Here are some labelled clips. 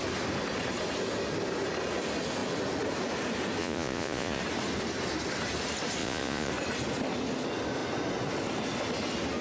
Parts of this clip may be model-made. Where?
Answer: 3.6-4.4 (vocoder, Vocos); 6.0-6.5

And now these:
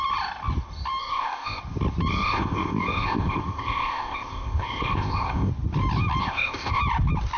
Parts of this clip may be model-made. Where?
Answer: 1.0-1.6 (codec, ZipCodec); 2.1-5.5; 6.2-6.8

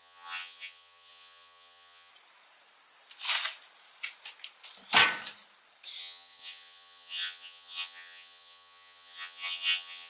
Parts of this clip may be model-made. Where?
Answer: 0.0-2.1 (vocoder, HiFi-GAN); 6.0-10.1

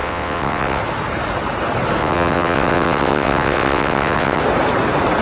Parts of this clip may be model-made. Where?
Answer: 0.0-0.8 (vocoder, WaveNeXt); 2.0-4.4

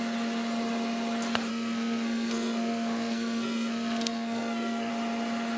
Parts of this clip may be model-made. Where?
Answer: 1.5-4.9 (codec, SNAC)

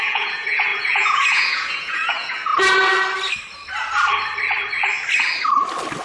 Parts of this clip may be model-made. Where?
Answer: 0.0-2.5 (vocoder, Vocos)

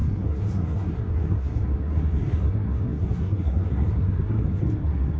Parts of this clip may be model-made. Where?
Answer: 0.0-5.2 (codec, SNAC)

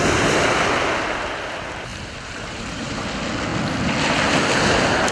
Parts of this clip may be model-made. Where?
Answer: 1.9-3.1 (vocoder, BigVGAN v2)